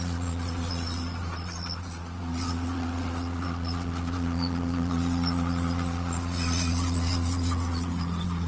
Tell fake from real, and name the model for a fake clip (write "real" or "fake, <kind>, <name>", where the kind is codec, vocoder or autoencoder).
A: fake, vocoder, Vocos